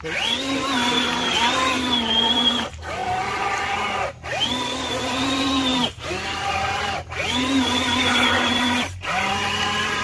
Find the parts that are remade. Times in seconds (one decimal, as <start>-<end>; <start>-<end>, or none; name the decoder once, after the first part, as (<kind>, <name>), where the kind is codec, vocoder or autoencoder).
none